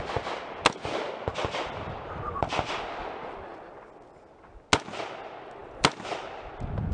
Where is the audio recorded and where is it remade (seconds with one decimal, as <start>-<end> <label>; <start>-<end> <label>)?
0.0-1.3 recorded; 1.3-2.7 remade; 2.7-5.6 recorded; 5.6-6.5 remade; 6.5-6.9 recorded